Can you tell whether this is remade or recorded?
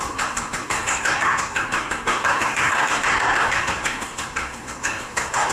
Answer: remade